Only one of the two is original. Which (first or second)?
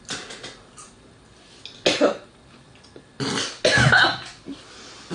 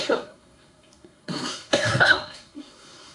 first